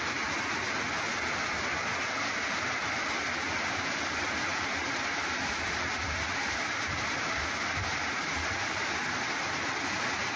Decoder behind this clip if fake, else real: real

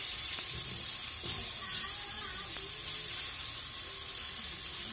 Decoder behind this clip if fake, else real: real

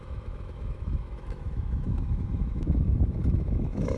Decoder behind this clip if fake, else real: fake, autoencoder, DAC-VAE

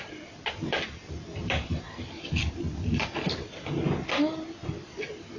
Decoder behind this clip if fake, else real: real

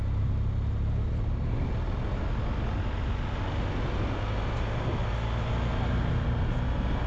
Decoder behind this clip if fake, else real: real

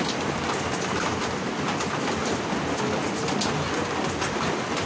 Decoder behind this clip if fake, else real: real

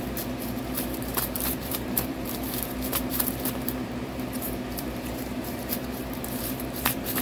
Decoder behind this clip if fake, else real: fake, vocoder, BigVGAN v2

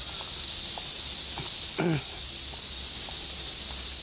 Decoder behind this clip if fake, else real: real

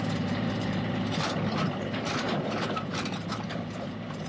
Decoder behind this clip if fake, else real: fake, vocoder, BigVGAN v2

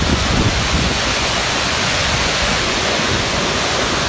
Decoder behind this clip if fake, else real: fake, vocoder, Vocos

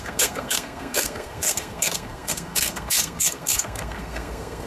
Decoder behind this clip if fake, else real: fake, codec, SNAC